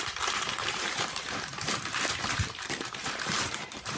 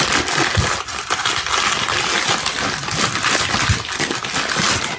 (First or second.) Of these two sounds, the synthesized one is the first